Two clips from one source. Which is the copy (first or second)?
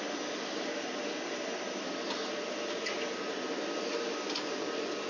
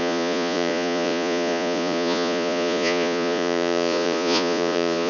second